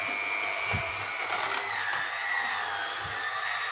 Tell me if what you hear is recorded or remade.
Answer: recorded